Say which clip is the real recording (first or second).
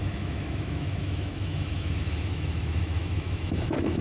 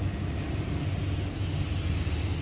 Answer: second